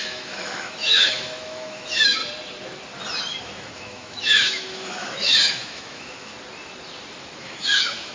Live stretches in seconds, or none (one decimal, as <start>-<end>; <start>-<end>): 2.2-3.4; 6.3-7.4